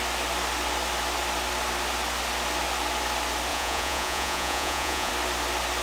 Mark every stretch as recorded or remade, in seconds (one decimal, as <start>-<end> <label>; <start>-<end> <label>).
0.0-3.5 recorded; 3.5-5.1 remade; 5.1-5.8 recorded